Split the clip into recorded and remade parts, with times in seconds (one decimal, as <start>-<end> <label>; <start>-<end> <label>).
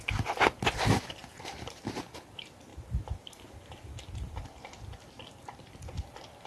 0.0-1.2 recorded; 1.2-1.8 remade; 1.8-2.7 recorded; 2.7-5.2 remade; 5.2-6.5 recorded